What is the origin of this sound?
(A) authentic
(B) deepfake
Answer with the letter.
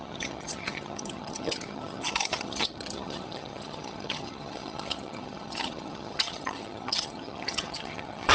B